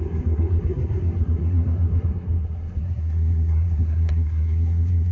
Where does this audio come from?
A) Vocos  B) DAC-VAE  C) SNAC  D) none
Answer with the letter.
C